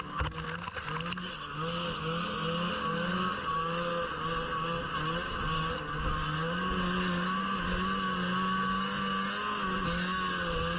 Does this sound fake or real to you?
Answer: real